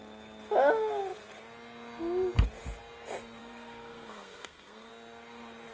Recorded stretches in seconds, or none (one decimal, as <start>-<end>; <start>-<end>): 0.0-3.4; 4.9-5.7